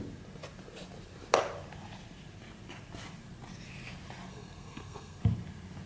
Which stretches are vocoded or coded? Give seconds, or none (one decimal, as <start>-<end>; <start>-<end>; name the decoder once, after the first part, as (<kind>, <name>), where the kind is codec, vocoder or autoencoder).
4.3-5.2 (codec, SNAC)